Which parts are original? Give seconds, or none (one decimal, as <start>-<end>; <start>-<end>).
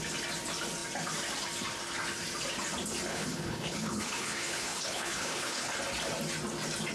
0.0-3.1; 5.7-6.9